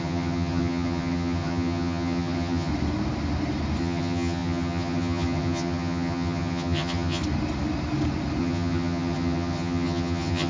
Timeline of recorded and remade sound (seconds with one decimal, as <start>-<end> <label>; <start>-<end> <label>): 0.0-2.7 remade; 2.7-3.8 recorded; 3.8-7.2 remade; 7.2-8.4 recorded; 8.4-10.5 remade